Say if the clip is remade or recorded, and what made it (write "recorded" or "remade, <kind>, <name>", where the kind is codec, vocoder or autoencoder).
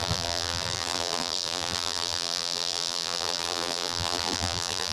remade, vocoder, BigVGAN v2